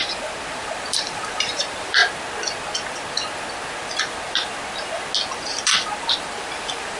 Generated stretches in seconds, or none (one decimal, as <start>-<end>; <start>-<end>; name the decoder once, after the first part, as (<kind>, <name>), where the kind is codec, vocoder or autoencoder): 0.5-2.0 (vocoder, BigVGAN v2); 6.2-7.0

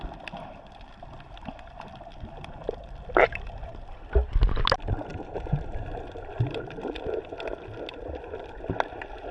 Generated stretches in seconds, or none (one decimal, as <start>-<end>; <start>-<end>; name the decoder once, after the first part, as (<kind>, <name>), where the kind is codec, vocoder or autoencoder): 5.1-5.8 (vocoder, BigVGAN v2)

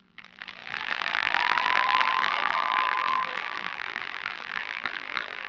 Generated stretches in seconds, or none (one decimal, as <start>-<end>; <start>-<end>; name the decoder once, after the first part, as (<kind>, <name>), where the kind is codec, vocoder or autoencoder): 0.0-5.5 (vocoder, BigVGAN v2)

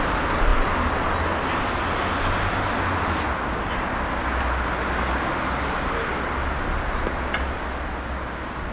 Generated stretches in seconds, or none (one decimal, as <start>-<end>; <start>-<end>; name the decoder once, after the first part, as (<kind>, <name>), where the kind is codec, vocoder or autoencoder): none